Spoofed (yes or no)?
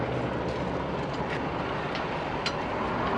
no